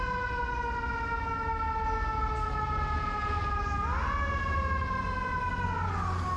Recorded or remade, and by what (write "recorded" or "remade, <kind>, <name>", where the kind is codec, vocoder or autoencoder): recorded